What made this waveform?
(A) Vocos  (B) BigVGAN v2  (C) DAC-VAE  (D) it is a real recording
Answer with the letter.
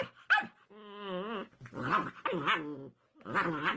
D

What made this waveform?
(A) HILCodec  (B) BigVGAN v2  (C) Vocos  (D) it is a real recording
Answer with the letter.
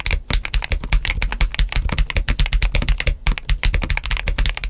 D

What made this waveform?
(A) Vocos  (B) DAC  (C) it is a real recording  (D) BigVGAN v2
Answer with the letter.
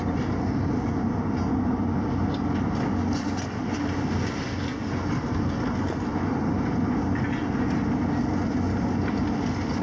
C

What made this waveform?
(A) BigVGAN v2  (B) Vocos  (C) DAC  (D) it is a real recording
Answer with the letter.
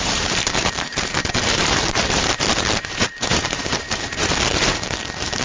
A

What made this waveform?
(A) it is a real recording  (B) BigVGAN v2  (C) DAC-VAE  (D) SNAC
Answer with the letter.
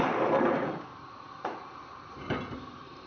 B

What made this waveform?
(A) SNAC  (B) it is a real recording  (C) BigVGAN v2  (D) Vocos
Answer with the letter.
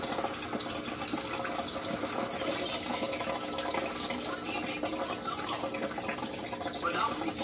B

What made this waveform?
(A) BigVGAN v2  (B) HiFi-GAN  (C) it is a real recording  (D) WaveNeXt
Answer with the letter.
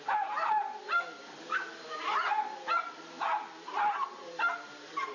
C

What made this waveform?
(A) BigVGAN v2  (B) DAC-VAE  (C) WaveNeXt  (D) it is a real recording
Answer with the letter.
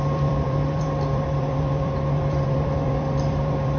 A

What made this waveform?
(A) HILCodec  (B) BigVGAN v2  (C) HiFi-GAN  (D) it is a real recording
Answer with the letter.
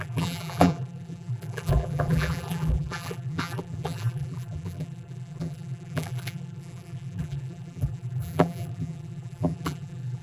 B